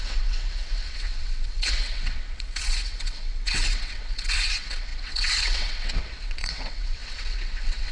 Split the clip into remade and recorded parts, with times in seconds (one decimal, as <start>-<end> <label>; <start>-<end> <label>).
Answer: 0.0-7.9 remade